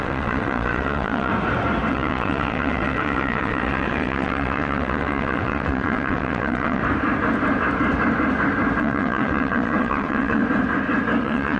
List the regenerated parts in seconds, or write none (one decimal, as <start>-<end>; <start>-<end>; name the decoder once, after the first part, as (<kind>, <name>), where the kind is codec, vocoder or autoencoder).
0.0-1.3 (vocoder, WaveNeXt); 1.9-6.8; 8.8-10.4; 11.2-11.6